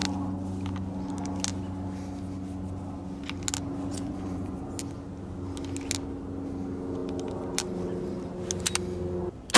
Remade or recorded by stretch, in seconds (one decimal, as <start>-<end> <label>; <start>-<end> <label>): 0.0-3.9 recorded; 3.9-4.6 remade; 4.6-9.6 recorded